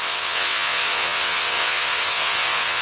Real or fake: fake